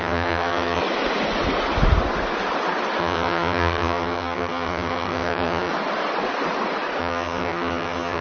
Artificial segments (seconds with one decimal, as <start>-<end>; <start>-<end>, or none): 0.0-0.8; 3.0-5.7; 7.0-8.2